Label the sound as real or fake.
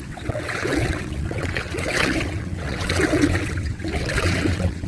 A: fake